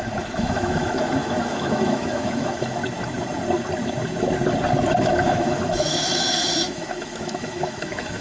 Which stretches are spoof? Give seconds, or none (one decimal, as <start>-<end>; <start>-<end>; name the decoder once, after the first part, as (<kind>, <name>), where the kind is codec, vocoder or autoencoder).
0.0-2.8 (autoencoder, DAC-VAE); 5.0-8.2

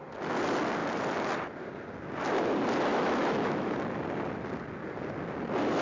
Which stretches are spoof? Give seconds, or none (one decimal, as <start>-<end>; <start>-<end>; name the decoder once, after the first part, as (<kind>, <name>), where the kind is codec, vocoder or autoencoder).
2.9-3.8 (autoencoder, DAC-VAE)

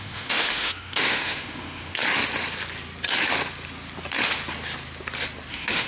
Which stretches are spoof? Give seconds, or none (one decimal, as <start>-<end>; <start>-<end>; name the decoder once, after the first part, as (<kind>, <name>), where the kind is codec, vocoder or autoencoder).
0.0-2.0 (autoencoder, DAC-VAE); 5.5-5.9

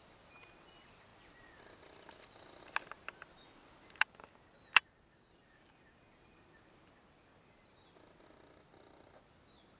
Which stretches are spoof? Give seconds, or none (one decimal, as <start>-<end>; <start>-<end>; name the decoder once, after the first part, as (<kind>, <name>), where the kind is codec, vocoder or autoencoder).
none

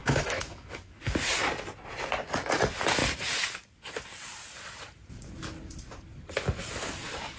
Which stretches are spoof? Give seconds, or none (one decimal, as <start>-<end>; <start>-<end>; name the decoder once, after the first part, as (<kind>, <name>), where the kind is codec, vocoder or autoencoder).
0.0-0.9 (autoencoder, DAC-VAE)

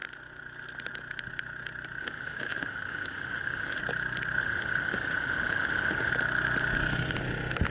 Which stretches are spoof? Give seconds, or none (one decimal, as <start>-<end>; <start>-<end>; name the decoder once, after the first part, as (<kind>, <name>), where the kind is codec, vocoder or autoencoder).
2.0-3.8 (autoencoder, DAC-VAE); 4.4-6.1

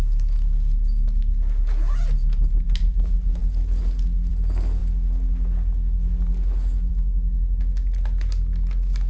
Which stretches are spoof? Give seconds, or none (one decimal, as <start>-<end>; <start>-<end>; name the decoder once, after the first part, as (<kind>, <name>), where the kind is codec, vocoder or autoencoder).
none